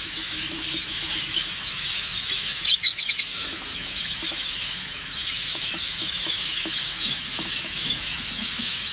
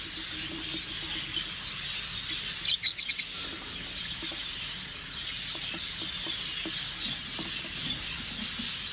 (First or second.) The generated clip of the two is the first